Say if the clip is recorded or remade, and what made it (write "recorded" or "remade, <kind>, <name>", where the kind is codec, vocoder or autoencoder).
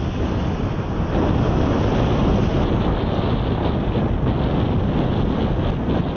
recorded